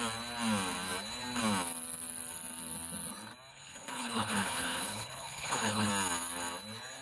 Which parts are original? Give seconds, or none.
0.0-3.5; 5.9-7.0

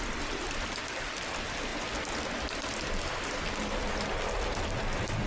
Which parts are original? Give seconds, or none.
0.0-5.3

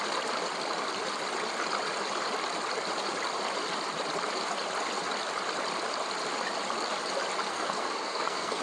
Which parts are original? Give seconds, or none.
0.0-7.5

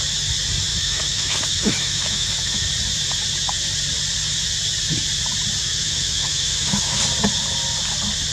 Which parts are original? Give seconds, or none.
0.0-0.7; 2.7-5.6; 7.0-8.3

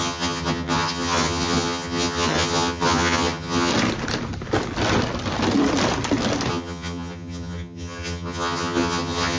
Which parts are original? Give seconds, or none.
3.7-6.5

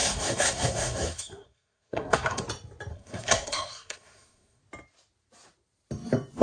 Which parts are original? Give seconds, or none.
2.4-2.9; 4.6-6.4